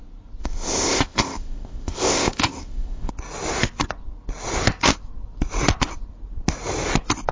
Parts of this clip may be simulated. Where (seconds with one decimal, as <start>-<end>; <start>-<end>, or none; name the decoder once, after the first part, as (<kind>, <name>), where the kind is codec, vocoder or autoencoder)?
0.4-3.1 (codec, ZipCodec)